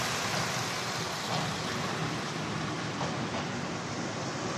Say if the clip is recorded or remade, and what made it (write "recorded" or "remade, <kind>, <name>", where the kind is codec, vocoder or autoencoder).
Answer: recorded